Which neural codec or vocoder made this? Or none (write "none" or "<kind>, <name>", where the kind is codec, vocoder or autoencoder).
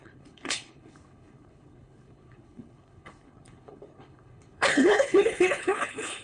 codec, HILCodec